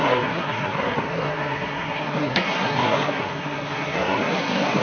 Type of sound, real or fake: fake